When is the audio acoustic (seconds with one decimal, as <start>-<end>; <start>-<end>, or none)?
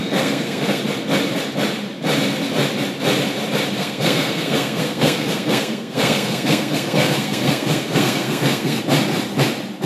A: 0.8-3.8; 8.8-9.9